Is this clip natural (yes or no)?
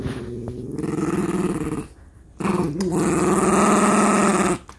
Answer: yes